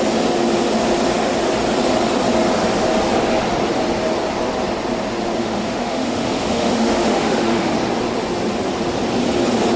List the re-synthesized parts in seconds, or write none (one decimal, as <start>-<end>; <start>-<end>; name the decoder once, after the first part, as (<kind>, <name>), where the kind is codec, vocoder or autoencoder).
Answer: 5.4-7.7 (autoencoder, DAC-VAE)